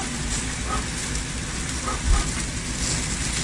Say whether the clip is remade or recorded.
recorded